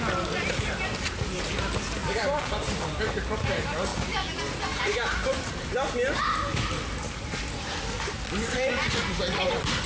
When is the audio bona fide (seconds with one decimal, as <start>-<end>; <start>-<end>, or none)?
0.0-2.0; 2.5-3.9; 4.4-9.9